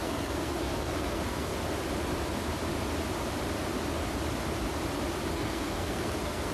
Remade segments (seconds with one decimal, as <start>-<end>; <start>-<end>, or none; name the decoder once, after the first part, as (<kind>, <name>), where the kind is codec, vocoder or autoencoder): 0.0-1.5 (codec, SNAC); 5.3-6.5